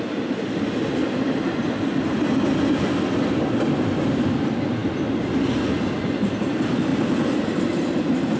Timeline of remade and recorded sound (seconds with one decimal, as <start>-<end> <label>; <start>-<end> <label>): 0.0-8.4 recorded